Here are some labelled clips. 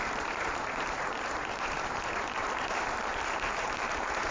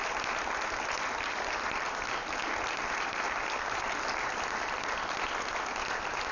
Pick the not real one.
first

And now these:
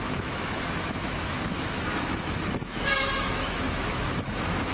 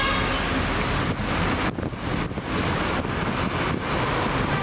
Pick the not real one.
first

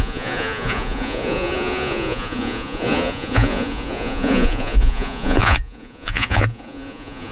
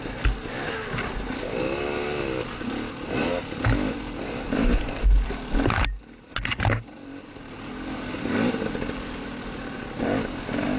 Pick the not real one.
first